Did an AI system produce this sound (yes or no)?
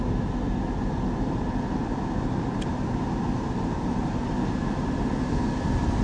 no